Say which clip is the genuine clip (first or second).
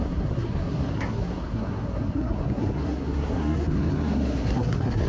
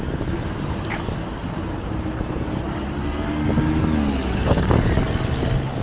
second